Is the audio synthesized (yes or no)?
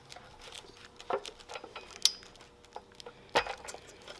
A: no